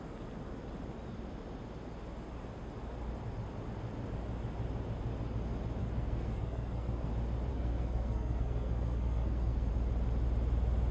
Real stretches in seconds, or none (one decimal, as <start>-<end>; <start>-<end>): 0.0-5.8; 7.1-7.5; 9.7-10.9